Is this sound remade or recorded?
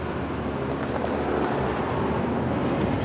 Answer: recorded